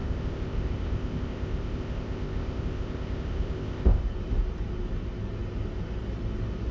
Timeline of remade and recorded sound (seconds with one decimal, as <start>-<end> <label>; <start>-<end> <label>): 0.0-4.0 remade; 4.0-6.7 recorded